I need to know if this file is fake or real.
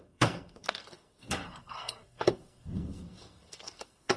fake